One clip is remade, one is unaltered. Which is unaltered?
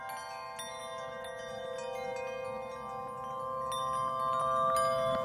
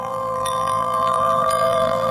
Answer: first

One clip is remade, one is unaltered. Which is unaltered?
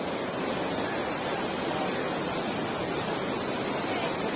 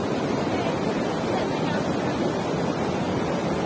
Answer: first